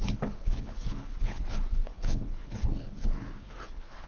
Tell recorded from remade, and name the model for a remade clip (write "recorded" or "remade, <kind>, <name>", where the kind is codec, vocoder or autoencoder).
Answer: remade, codec, HILCodec